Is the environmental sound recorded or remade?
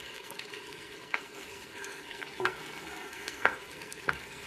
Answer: remade